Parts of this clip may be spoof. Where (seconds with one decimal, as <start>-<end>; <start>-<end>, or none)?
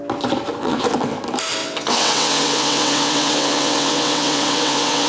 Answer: 0.6-1.2; 1.6-5.1